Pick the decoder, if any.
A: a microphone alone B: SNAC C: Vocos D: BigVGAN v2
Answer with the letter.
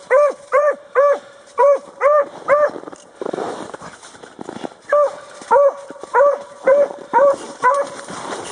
D